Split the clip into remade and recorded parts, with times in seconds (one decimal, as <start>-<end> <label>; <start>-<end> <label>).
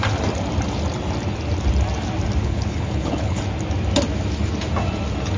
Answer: 0.0-2.4 recorded; 2.4-3.4 remade; 3.4-5.4 recorded